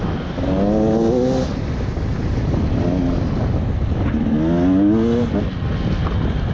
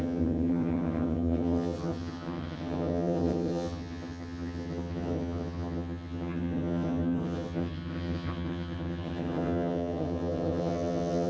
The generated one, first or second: second